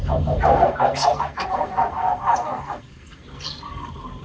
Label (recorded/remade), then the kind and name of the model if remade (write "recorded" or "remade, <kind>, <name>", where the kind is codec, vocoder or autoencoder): remade, codec, SNAC